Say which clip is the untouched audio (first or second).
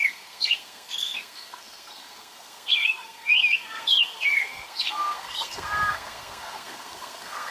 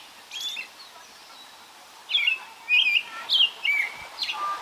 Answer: second